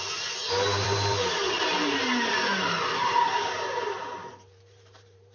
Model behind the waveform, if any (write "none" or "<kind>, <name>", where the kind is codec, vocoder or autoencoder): vocoder, BigVGAN v2